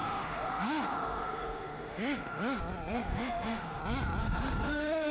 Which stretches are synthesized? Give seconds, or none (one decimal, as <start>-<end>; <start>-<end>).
0.0-2.6; 3.1-3.8; 4.2-5.1